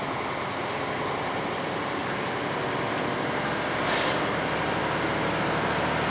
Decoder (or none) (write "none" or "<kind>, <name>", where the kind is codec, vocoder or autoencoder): none